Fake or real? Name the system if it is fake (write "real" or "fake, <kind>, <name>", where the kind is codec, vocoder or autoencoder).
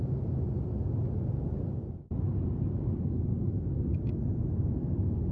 real